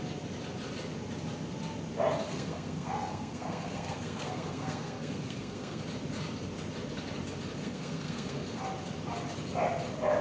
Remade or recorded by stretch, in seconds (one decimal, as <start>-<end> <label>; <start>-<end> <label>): 0.0-2.3 recorded; 2.3-5.8 remade; 5.8-7.6 recorded; 7.6-8.6 remade; 8.6-10.2 recorded